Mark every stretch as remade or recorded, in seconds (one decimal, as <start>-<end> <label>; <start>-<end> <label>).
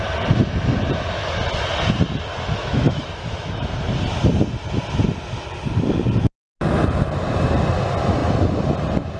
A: 0.0-2.6 recorded; 2.6-3.8 remade; 3.8-9.2 recorded